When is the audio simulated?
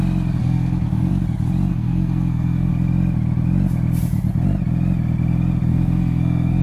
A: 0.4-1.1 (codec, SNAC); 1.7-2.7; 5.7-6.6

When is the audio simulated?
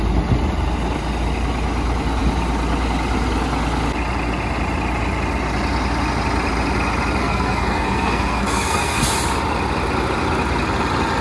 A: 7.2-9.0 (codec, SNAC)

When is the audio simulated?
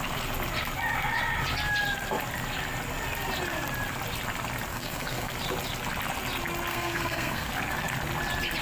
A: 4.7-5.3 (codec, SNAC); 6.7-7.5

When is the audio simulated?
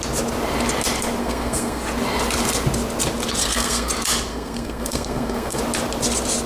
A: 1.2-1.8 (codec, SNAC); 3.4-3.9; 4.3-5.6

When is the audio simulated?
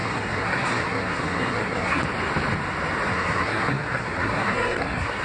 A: 0.0-2.0 (codec, SNAC); 3.1-5.2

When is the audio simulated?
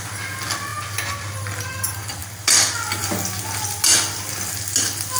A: none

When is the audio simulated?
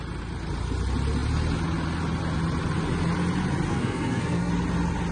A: 3.7-4.5 (codec, SNAC)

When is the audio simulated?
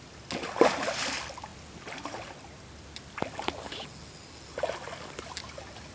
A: none